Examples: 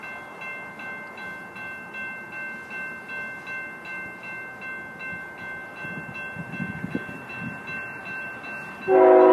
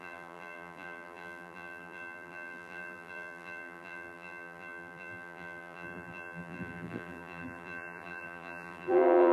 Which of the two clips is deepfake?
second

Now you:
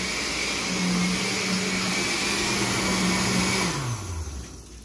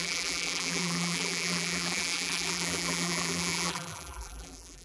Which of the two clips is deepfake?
second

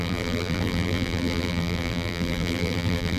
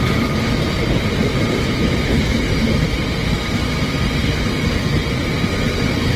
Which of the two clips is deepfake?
first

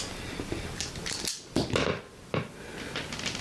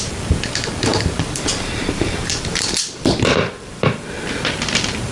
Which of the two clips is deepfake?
second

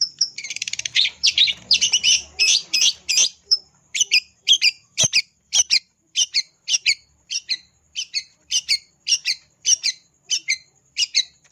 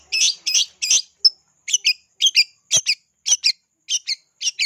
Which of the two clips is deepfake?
first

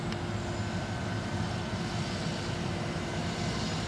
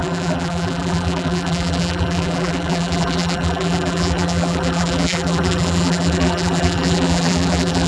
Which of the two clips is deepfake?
second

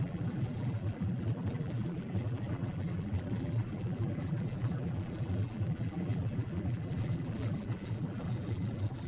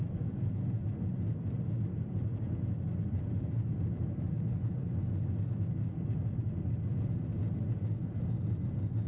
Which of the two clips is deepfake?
first